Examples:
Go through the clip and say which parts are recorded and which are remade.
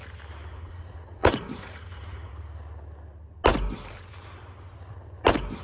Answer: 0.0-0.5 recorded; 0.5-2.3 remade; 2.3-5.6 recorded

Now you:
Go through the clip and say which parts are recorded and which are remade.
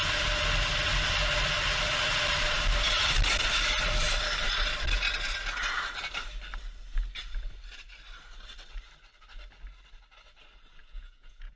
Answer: 0.0-10.8 recorded; 10.8-11.6 remade